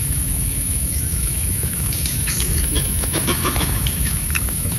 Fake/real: fake